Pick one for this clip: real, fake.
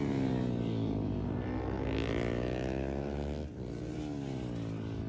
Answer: real